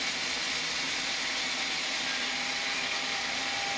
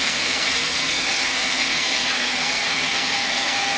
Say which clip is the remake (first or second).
second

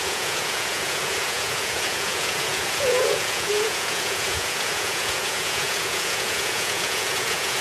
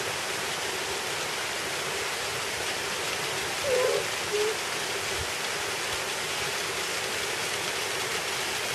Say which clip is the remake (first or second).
first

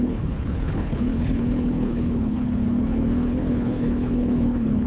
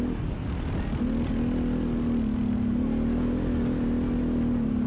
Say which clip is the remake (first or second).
first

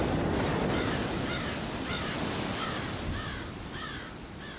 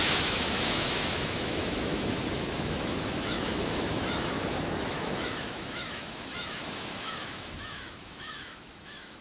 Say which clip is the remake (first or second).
second